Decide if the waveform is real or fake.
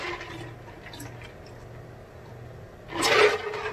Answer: real